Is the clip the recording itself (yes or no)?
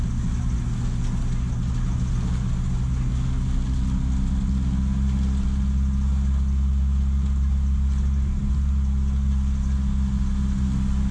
yes